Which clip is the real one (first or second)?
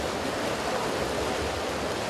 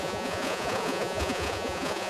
first